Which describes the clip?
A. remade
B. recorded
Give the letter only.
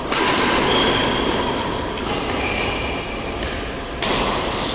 B